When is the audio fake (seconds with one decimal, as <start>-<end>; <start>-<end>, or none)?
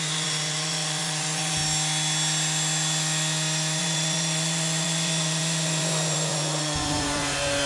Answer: 0.0-1.6; 3.8-7.7